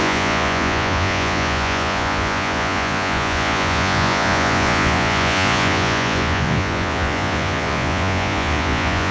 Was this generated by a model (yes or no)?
yes